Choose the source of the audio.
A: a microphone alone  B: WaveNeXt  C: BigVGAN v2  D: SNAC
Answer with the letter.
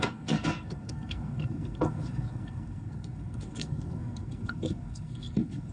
D